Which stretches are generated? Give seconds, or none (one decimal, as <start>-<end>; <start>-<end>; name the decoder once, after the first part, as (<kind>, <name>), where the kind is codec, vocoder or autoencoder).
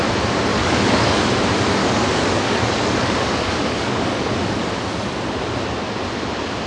0.5-1.2 (codec, DAC); 1.8-4.3